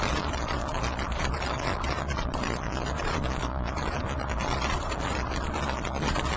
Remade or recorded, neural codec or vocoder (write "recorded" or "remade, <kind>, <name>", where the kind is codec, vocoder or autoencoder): remade, vocoder, Vocos